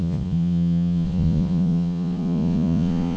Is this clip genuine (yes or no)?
no